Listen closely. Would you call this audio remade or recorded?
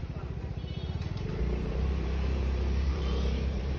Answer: remade